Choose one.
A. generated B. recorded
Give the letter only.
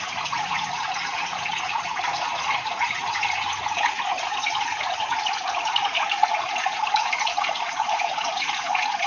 A